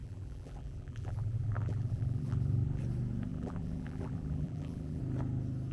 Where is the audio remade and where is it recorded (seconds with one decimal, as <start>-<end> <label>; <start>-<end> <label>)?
0.0-2.8 remade; 2.8-3.3 recorded; 3.3-5.0 remade; 5.0-5.7 recorded